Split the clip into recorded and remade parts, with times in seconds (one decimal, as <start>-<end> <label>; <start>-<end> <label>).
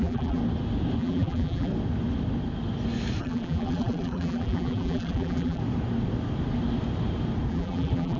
0.0-0.4 remade; 0.4-1.0 recorded; 1.0-1.7 remade; 1.7-3.2 recorded; 3.2-5.6 remade; 5.6-7.5 recorded; 7.5-8.2 remade